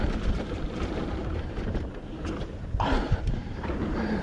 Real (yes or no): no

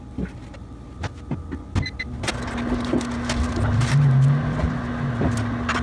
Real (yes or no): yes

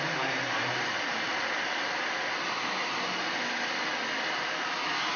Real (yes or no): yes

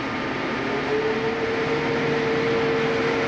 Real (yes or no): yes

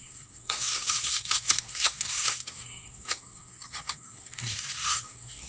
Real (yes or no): no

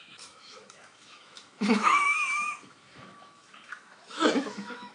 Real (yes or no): no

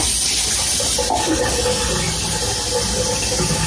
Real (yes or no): yes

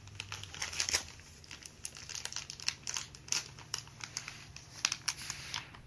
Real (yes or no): yes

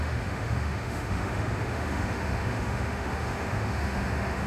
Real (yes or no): no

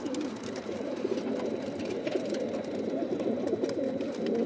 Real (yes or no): yes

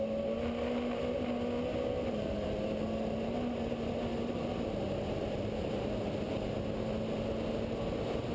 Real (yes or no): yes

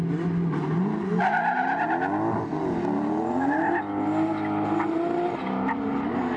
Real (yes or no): yes